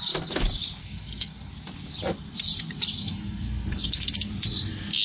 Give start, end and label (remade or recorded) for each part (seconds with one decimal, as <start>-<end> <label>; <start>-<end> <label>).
0.0-0.8 recorded; 0.8-1.5 remade; 1.5-3.0 recorded; 3.0-4.3 remade; 4.3-5.0 recorded